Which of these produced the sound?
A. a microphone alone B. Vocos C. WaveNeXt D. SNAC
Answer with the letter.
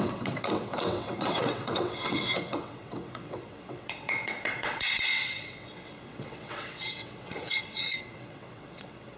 C